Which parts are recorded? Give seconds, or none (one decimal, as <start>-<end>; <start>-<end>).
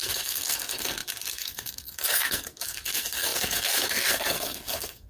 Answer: none